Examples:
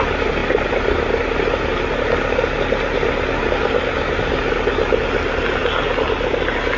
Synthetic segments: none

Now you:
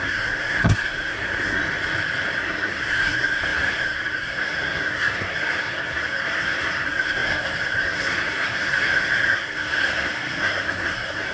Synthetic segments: 0.0-1.6; 2.4-11.3